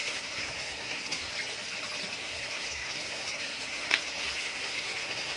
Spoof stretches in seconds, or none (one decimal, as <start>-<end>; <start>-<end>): 0.0-1.3; 2.2-5.4